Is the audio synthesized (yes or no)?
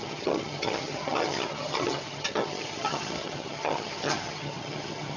yes